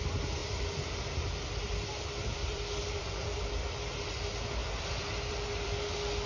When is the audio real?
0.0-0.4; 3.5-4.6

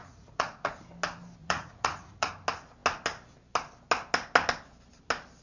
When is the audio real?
0.7-1.4; 2.3-5.4

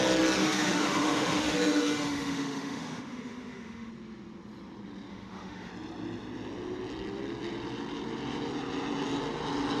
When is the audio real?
0.0-0.4; 3.9-5.1; 5.7-9.8

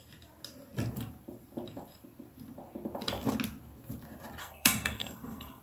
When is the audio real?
0.0-4.4

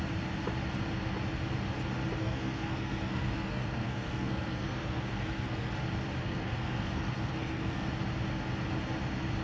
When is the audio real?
0.0-2.2; 5.7-6.2; 7.9-9.4